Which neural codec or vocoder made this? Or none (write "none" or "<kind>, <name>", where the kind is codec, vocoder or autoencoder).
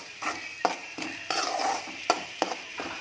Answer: vocoder, BigVGAN v2